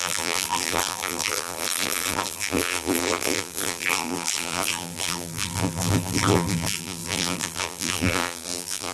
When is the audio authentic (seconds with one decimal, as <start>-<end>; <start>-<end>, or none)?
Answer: none